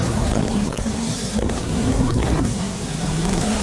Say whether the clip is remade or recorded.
remade